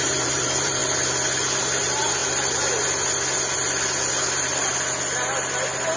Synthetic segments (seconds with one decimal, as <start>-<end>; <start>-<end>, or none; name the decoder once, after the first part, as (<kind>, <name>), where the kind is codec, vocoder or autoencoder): 0.0-0.8 (vocoder, BigVGAN v2); 1.6-2.2